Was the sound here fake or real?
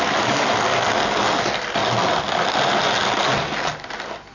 real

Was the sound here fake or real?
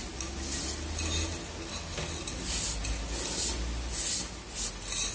real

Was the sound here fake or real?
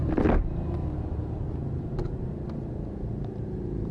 real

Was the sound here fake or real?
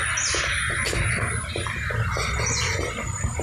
real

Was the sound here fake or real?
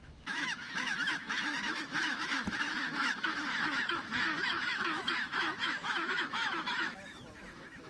fake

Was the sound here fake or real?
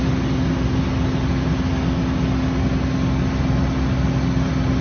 real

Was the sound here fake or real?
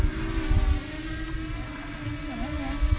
real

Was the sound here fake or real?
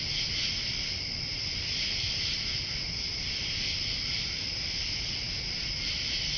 real